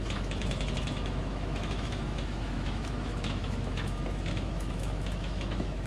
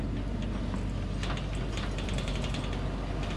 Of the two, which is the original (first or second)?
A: second